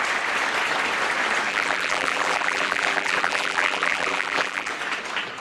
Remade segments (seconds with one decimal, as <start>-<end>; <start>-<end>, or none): 1.5-4.7